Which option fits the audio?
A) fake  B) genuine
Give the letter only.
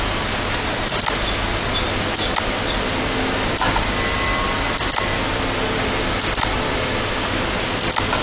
B